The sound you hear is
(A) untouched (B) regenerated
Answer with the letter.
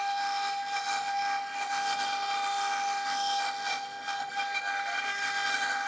B